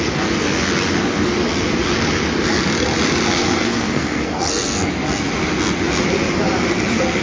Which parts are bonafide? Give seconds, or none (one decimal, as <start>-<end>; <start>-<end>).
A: 0.0-3.4; 4.9-7.2